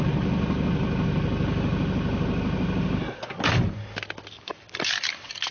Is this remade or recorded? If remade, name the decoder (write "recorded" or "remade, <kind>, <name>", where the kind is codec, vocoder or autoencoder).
recorded